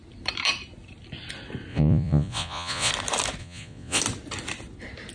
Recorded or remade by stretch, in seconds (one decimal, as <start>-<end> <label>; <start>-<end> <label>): 0.0-1.7 recorded; 1.7-2.9 remade; 2.9-3.4 recorded; 3.4-4.0 remade; 4.0-5.1 recorded